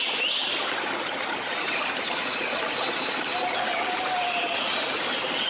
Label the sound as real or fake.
real